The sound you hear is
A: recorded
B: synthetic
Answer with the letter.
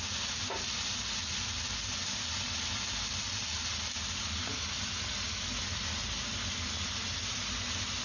A